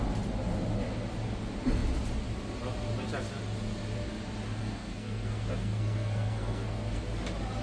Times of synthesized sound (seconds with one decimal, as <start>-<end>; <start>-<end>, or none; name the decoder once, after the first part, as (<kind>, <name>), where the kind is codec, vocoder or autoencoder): 4.6-7.0 (codec, SNAC)